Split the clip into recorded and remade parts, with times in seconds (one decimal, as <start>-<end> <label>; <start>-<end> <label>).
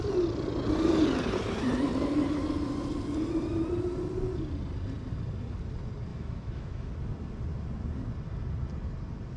0.0-6.1 recorded; 6.1-6.9 remade; 6.9-9.4 recorded